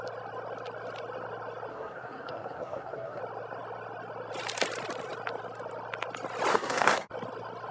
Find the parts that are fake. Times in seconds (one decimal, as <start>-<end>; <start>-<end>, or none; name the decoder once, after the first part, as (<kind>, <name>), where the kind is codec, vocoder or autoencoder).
1.7-3.2 (codec, SNAC); 6.5-7.1